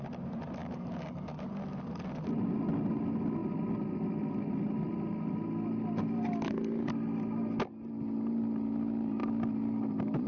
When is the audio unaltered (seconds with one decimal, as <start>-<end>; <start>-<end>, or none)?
0.0-0.6; 1.5-10.3